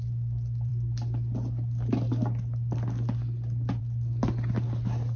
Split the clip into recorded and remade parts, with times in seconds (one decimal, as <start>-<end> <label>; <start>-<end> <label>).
0.0-5.2 recorded